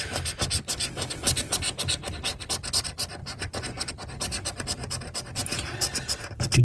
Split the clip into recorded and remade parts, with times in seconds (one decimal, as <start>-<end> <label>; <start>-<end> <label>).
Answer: 0.0-3.2 recorded; 3.2-3.9 remade; 3.9-6.6 recorded